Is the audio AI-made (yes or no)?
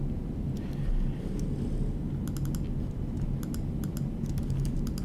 no